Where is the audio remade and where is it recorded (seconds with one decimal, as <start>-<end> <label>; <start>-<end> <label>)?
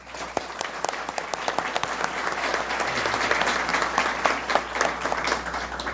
0.0-5.9 recorded